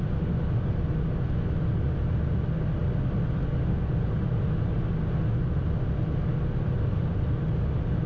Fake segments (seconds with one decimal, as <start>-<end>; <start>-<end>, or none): none